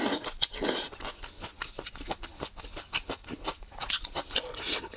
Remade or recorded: recorded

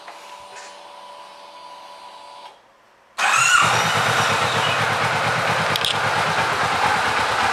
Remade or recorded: recorded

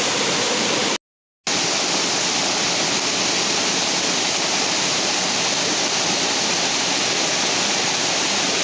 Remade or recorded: recorded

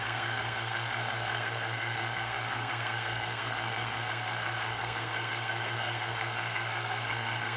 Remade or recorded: remade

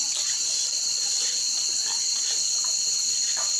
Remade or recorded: remade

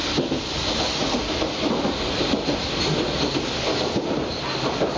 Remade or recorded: recorded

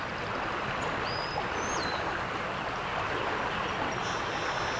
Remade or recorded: recorded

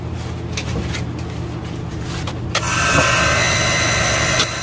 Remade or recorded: recorded